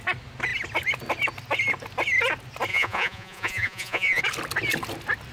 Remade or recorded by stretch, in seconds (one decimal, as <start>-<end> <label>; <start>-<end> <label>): 0.0-2.7 recorded; 2.7-4.2 remade; 4.2-5.3 recorded